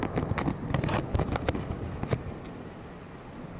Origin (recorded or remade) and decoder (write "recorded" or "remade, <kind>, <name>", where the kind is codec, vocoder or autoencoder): recorded